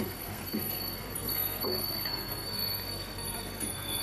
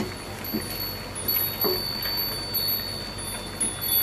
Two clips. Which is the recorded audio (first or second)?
second